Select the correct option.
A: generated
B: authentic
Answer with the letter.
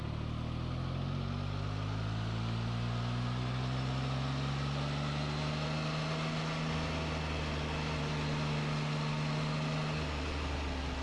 B